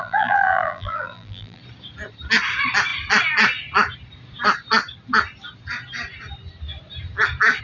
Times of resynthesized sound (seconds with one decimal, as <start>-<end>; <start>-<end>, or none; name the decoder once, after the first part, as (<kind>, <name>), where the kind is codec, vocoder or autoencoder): 0.0-1.6 (vocoder, BigVGAN v2)

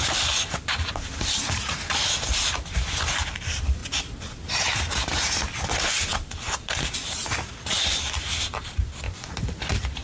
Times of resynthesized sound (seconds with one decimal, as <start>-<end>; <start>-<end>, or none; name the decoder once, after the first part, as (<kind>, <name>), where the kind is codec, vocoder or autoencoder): 0.0-3.8 (vocoder, BigVGAN v2); 4.5-7.2; 8.8-10.0

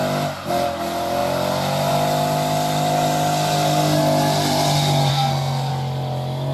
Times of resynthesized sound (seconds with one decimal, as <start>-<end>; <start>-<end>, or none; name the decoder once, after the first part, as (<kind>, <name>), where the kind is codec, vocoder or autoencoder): 5.1-5.7 (codec, SNAC)

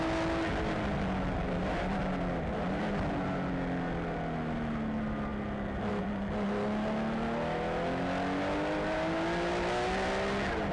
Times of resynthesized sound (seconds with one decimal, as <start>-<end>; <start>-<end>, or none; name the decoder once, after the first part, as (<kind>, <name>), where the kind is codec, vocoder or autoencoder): none

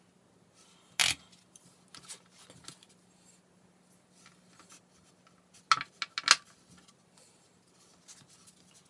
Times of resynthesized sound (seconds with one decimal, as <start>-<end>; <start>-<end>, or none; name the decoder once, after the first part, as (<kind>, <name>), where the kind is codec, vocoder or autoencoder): none

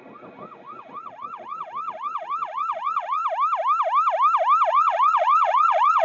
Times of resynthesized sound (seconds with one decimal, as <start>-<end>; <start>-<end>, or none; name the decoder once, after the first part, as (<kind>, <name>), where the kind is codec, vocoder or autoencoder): 0.0-3.2 (vocoder, Vocos); 4.7-6.0

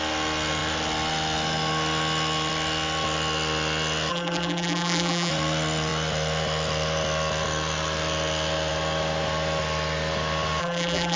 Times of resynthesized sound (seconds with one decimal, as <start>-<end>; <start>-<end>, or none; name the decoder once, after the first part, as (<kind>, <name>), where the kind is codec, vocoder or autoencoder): 4.1-5.3 (vocoder, BigVGAN v2); 10.6-11.2

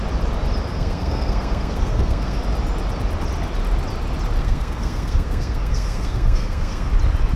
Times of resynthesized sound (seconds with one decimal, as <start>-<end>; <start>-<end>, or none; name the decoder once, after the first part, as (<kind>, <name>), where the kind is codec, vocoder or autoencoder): 0.7-2.4 (codec, SNAC); 4.4-6.9